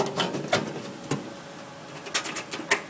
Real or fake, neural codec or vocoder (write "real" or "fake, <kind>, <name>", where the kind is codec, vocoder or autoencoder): real